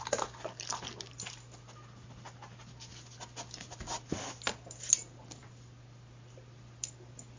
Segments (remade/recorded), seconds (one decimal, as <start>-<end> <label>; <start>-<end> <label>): 0.0-7.4 recorded